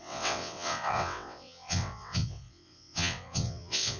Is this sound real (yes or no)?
no